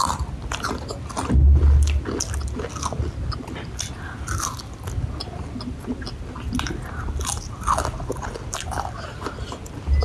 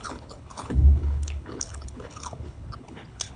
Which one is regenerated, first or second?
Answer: second